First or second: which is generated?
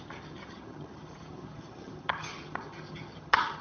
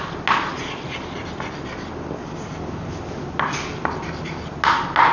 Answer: first